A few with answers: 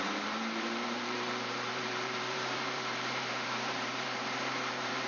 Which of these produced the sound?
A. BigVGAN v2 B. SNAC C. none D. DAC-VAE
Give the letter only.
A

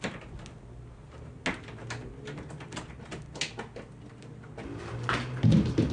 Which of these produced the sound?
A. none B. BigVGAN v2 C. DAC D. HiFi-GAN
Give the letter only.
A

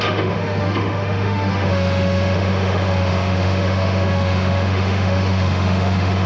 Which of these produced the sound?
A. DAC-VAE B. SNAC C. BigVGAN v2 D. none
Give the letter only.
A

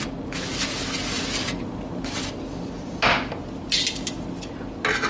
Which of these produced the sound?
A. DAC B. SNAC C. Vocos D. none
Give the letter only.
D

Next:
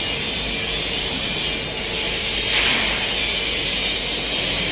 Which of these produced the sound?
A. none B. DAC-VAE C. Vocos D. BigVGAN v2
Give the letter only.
A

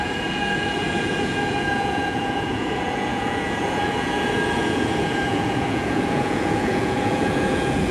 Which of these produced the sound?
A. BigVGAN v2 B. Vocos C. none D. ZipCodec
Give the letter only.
B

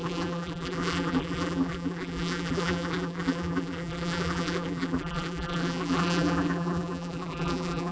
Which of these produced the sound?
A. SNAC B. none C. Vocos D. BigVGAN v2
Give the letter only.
D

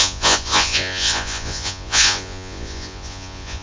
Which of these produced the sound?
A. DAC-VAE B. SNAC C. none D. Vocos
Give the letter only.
D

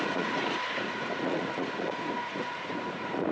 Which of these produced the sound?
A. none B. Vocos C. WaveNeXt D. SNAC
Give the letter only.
B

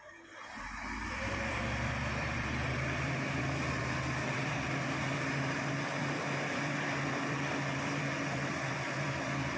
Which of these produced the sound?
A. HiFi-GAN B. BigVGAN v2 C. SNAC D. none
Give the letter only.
B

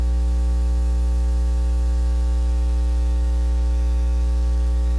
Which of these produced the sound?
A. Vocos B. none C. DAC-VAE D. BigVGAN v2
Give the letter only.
C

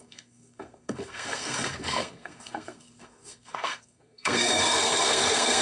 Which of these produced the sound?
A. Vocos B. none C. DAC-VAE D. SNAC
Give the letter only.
D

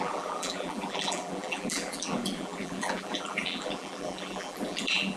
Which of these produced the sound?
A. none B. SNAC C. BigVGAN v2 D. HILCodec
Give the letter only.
C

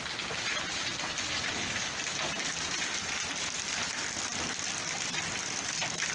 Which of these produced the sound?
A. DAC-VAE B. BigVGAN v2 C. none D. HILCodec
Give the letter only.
C